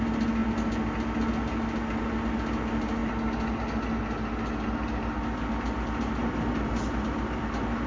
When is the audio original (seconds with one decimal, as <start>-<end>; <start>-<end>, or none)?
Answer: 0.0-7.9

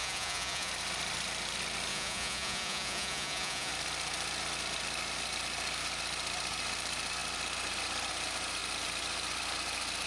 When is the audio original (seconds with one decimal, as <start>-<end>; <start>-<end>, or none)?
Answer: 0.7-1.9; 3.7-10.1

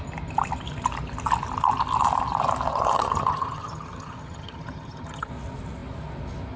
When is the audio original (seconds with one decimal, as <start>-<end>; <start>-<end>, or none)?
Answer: 0.0-2.7; 5.3-6.6

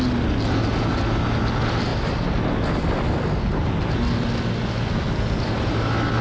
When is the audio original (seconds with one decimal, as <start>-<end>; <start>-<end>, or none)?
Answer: 0.0-6.2

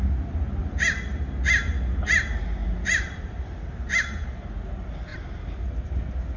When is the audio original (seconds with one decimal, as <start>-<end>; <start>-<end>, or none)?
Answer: 0.0-0.6; 1.1-2.6; 3.5-5.1; 6.0-6.4

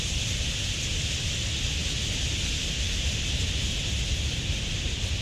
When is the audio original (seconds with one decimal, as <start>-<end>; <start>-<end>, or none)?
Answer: 0.0-5.2

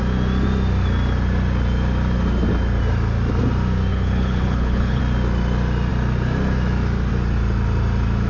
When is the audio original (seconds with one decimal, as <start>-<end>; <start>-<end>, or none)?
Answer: 0.0-3.9; 5.0-8.3